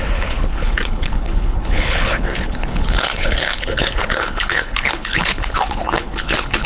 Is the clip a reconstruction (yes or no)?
yes